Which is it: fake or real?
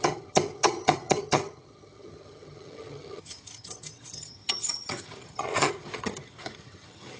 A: fake